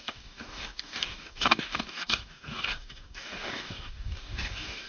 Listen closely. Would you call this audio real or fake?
fake